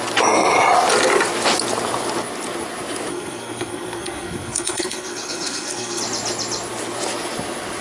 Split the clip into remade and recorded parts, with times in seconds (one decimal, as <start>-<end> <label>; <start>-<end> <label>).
0.0-3.1 recorded; 3.1-6.0 remade; 6.0-7.8 recorded